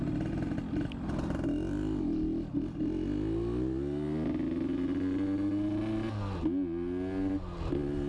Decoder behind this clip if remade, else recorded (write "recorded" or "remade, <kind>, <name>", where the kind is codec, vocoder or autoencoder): recorded